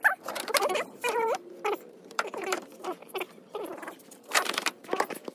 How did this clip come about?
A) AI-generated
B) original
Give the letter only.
A